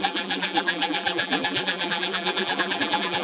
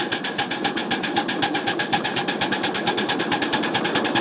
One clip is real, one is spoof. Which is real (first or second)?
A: second